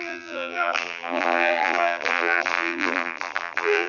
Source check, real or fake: fake